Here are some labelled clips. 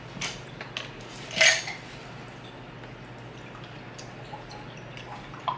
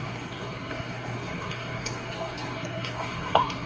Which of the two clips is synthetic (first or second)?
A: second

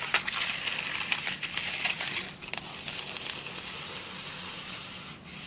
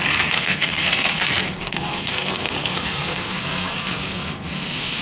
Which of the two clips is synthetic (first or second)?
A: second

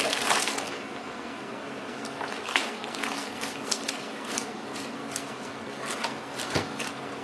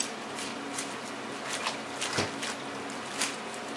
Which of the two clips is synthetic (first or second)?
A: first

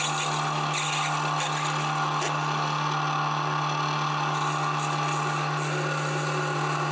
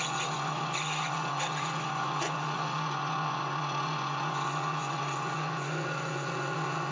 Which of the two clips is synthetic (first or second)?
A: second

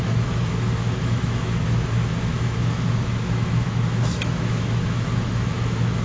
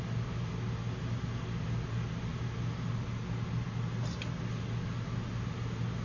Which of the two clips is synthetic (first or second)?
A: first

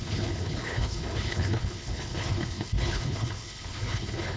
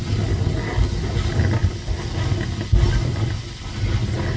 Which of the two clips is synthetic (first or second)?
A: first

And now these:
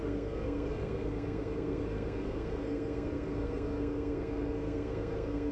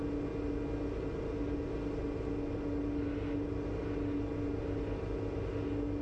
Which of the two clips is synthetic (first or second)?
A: first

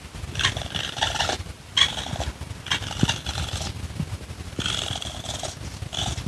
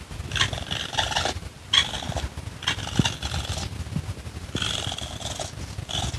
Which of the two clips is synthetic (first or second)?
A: first